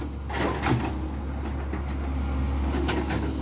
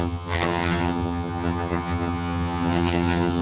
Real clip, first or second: first